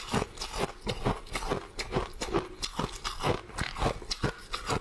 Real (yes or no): yes